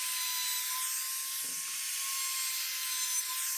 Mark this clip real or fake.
real